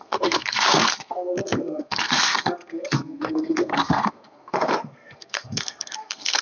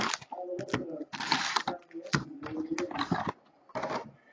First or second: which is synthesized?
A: first